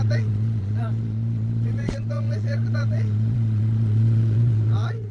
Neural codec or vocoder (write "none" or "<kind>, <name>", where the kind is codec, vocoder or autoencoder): vocoder, Vocos